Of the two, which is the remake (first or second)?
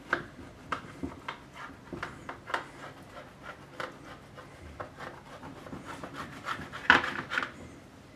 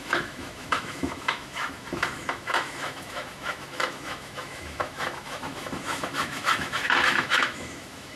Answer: second